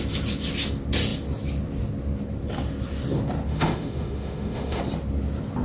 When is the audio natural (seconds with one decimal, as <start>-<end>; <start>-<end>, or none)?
0.0-3.5; 4.8-5.6